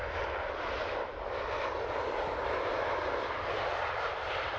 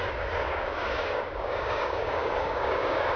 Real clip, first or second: first